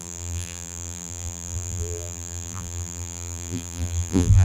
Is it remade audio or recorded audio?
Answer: remade